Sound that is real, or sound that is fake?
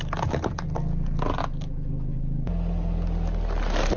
real